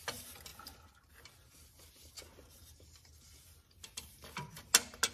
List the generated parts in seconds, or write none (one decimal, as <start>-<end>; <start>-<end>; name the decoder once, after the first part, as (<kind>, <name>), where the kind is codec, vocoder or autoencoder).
none